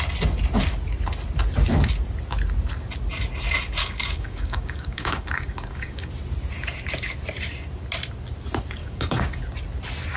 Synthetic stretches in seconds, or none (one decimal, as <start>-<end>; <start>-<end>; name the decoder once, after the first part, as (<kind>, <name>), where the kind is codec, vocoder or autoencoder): 3.8-6.1 (codec, DAC); 8.8-9.4